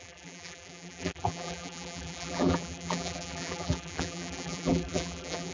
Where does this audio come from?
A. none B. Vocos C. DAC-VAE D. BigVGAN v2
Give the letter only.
D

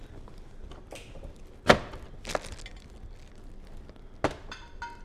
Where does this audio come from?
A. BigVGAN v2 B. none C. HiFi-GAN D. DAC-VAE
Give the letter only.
B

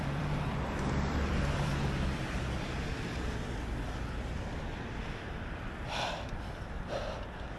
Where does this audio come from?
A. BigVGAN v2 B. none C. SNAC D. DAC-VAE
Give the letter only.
A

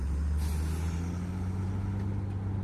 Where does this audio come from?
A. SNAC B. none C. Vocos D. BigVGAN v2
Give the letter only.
B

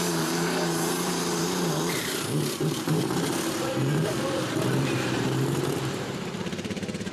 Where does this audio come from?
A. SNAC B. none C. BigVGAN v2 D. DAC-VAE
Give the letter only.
C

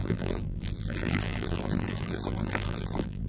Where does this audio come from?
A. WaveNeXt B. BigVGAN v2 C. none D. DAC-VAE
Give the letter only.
B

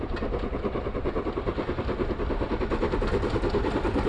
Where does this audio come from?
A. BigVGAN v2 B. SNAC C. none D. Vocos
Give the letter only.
C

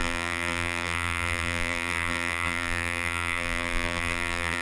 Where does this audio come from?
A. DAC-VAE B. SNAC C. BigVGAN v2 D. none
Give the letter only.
C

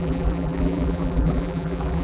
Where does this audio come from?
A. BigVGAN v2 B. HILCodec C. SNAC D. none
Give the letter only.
A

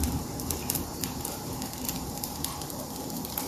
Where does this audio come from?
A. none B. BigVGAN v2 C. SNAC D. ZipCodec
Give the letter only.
B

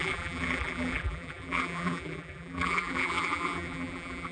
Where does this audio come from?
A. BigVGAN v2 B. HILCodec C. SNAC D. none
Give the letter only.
A